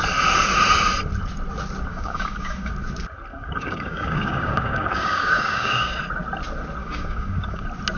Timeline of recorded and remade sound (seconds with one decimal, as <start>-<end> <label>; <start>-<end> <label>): 0.0-1.9 recorded; 1.9-2.7 remade; 2.7-3.3 recorded; 3.3-6.0 remade; 6.0-6.8 recorded; 6.8-7.6 remade; 7.6-8.0 recorded

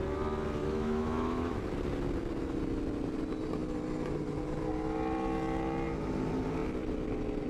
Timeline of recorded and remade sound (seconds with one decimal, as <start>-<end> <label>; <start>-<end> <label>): 0.0-0.6 recorded; 0.6-1.6 remade; 1.6-7.5 recorded